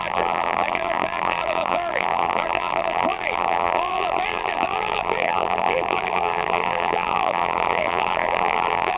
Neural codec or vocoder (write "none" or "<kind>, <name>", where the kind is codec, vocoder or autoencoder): vocoder, BigVGAN v2